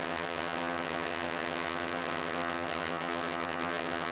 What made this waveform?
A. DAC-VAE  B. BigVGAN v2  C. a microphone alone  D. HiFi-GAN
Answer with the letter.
D